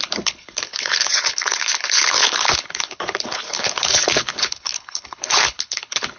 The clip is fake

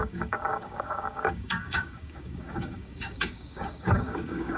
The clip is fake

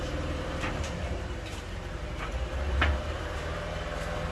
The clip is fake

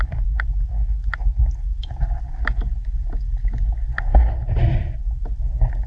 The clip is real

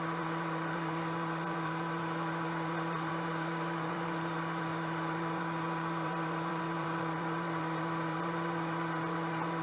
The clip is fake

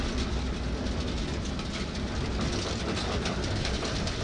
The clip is real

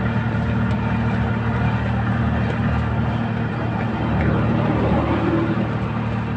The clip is real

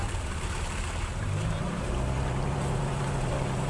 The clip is fake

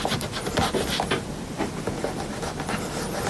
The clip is real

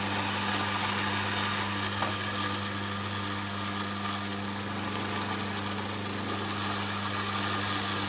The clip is real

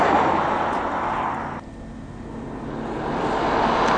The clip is real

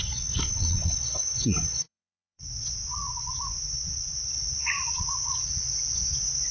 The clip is fake